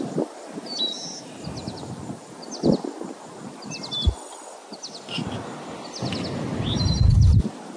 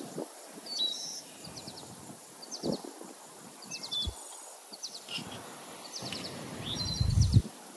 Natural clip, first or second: first